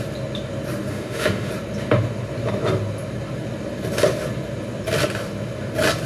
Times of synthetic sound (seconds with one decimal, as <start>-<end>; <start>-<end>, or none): 0.9-1.5